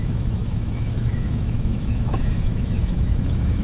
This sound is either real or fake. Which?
fake